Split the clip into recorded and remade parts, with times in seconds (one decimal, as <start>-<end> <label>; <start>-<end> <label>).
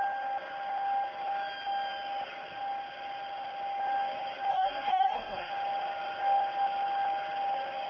0.0-4.5 recorded; 4.5-5.5 remade; 5.5-7.9 recorded